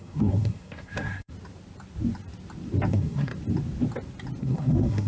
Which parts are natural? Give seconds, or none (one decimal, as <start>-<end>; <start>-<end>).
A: 1.3-2.9; 3.3-4.4